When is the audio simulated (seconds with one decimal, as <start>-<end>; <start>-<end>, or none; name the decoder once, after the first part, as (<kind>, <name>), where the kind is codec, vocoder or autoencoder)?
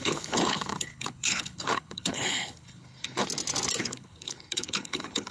0.0-3.2 (codec, HILCodec); 3.8-5.3